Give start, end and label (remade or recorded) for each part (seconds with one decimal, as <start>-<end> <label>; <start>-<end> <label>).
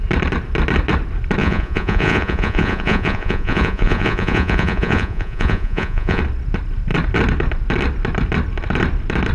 0.0-1.4 recorded; 1.4-6.2 remade; 6.2-9.3 recorded